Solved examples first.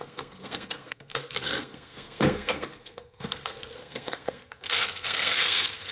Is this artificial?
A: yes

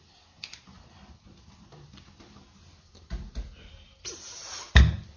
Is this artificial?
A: no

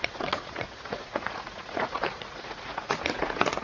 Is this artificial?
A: yes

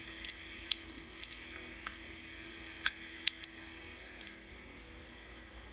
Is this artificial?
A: yes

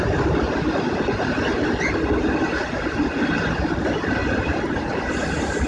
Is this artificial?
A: no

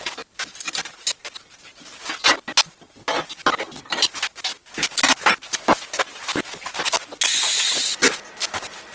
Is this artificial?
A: no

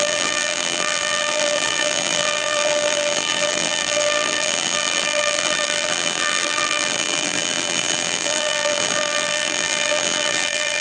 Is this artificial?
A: yes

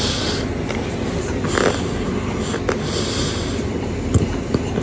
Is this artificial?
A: no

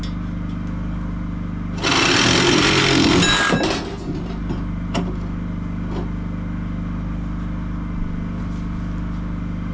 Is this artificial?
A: no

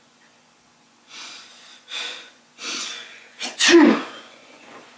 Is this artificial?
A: yes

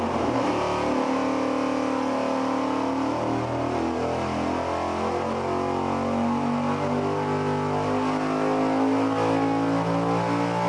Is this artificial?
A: no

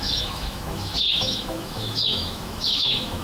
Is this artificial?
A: yes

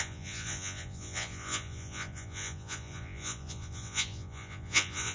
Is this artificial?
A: yes